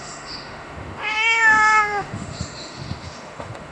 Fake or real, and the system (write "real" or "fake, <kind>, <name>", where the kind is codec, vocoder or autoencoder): fake, autoencoder, DAC-VAE